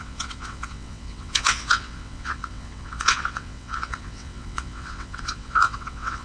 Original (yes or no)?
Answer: no